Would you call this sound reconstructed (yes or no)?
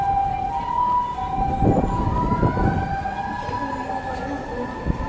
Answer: no